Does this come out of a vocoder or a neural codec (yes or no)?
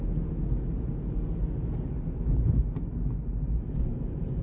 no